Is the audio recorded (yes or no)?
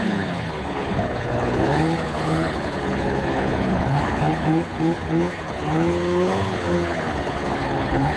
no